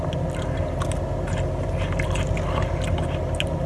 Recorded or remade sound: recorded